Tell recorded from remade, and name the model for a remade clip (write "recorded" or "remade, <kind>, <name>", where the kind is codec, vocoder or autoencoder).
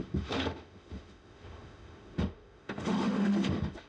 remade, autoencoder, DAC-VAE